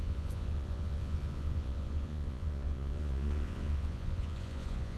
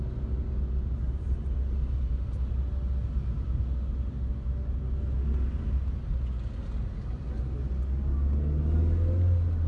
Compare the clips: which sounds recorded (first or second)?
second